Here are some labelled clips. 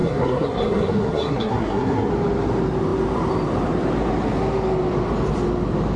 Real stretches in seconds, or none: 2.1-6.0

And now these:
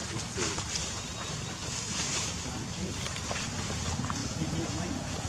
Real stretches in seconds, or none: 0.0-4.2